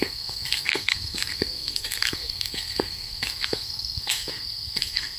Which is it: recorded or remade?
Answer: remade